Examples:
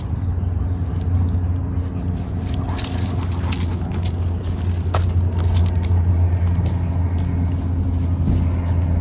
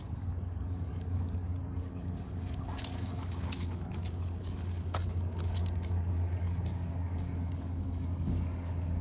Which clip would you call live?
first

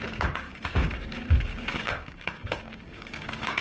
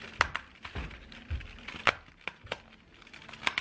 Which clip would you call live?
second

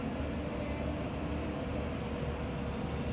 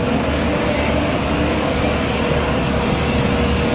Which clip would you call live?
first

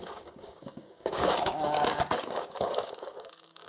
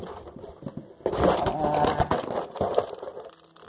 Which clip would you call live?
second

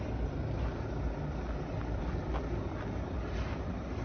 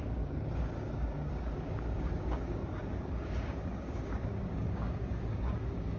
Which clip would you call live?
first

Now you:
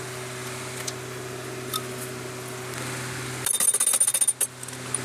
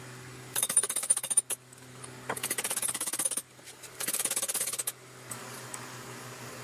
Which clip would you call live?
first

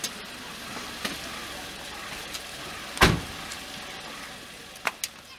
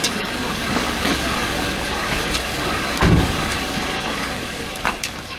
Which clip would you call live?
first